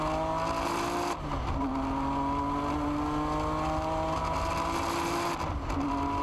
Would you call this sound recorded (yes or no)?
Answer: yes